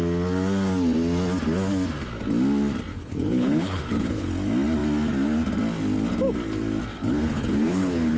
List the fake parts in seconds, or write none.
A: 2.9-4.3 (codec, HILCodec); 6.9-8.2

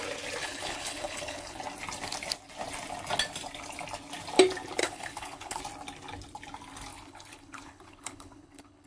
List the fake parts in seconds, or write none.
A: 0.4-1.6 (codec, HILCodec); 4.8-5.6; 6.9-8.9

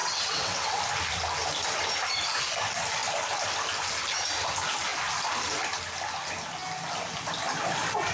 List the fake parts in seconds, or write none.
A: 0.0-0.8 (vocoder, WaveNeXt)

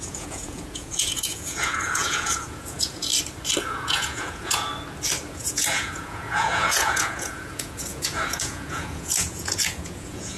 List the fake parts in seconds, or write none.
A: 0.0-3.1 (vocoder, Vocos); 3.6-4.7; 5.3-10.4

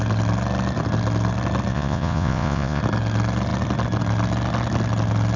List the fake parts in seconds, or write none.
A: 1.7-2.8 (vocoder, Vocos)